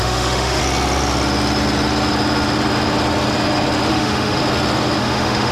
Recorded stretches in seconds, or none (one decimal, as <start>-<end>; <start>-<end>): 0.6-3.9; 4.4-5.0